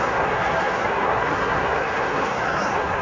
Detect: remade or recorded remade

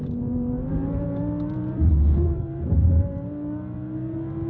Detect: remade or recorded remade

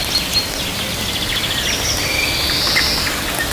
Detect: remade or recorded recorded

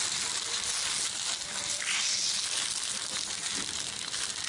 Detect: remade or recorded recorded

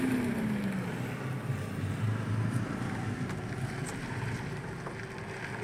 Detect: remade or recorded recorded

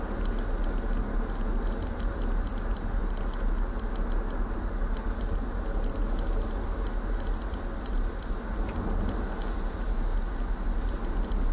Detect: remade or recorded recorded